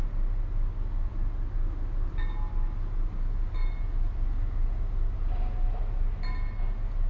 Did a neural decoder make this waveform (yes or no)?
no